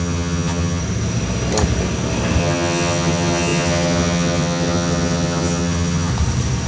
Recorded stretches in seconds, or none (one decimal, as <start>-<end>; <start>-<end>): 0.8-2.4; 6.1-6.7